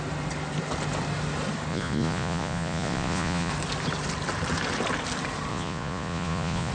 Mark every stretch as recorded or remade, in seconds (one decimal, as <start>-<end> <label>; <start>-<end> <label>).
0.0-1.7 recorded; 1.7-3.5 remade; 3.5-5.5 recorded; 5.5-6.7 remade